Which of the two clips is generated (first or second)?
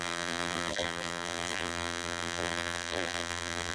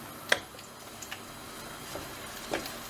first